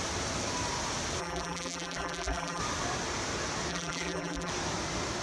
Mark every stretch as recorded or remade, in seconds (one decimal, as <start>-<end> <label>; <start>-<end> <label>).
0.0-1.2 recorded; 1.2-2.6 remade; 2.6-3.7 recorded; 3.7-4.5 remade; 4.5-5.2 recorded